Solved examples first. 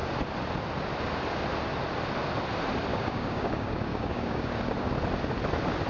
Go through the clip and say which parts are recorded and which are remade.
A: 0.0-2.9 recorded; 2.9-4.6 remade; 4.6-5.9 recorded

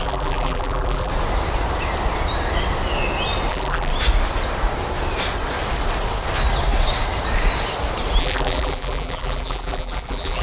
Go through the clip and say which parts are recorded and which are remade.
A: 0.0-1.1 remade; 1.1-3.5 recorded; 3.5-3.9 remade; 3.9-8.2 recorded; 8.2-10.4 remade

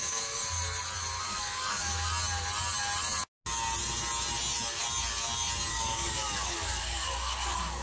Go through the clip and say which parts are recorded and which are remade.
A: 0.0-0.4 remade; 0.4-1.2 recorded; 1.2-1.9 remade; 1.9-5.7 recorded; 5.7-7.8 remade

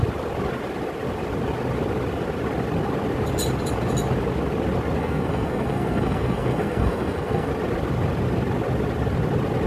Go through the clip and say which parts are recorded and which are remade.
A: 0.0-5.0 recorded; 5.0-7.5 remade; 7.5-9.7 recorded

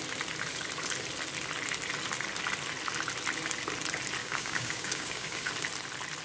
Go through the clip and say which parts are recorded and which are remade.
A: 0.0-4.2 recorded; 4.2-5.5 remade; 5.5-6.2 recorded

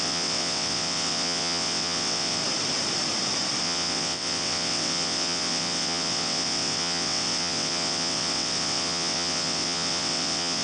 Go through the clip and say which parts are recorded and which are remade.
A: 0.0-2.4 remade; 2.4-3.6 recorded; 3.6-10.6 remade

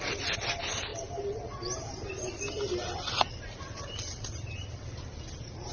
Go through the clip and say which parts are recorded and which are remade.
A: 0.0-5.7 recorded

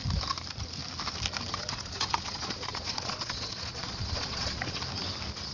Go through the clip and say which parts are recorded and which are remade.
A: 0.0-1.5 recorded; 1.5-4.8 remade; 4.8-5.5 recorded